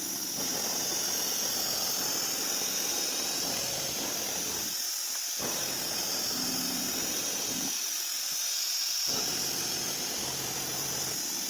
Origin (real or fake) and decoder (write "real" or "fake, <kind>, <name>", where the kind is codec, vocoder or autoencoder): real